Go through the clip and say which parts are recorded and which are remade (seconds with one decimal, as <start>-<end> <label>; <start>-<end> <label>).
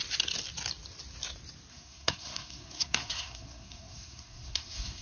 0.0-1.7 recorded; 1.7-5.0 remade